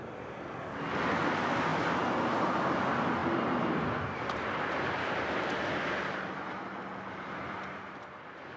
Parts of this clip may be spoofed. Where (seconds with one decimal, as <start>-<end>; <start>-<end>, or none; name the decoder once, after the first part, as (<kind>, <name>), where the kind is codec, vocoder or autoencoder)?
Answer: none